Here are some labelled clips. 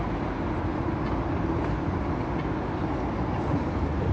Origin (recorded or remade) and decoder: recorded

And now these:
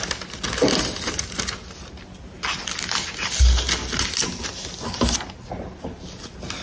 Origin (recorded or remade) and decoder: recorded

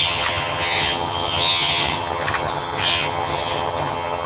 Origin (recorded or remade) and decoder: remade, vocoder, HiFi-GAN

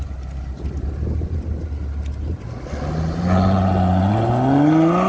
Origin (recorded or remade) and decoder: recorded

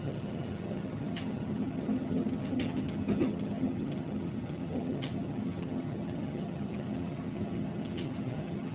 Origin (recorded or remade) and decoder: remade, vocoder, HiFi-GAN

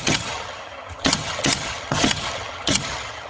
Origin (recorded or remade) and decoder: remade, vocoder, HiFi-GAN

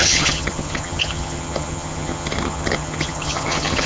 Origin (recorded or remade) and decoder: remade, vocoder, HiFi-GAN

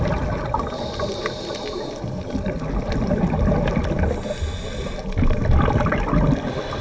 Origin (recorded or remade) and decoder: recorded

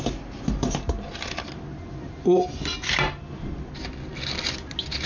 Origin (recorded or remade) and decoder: recorded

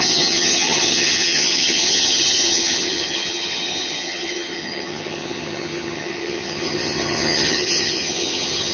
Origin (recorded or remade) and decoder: remade, vocoder, HiFi-GAN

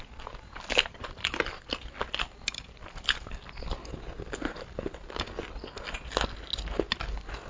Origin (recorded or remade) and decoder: recorded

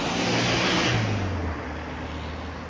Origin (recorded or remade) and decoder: recorded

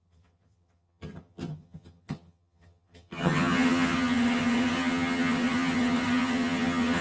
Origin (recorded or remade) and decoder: remade, vocoder, HiFi-GAN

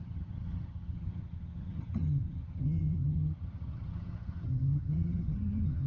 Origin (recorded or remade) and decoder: remade, vocoder, HiFi-GAN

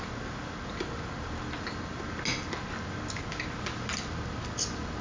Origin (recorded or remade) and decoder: recorded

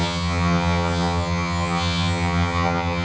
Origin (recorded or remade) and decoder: remade, vocoder, HiFi-GAN